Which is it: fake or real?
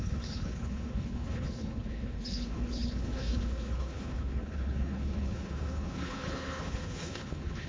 fake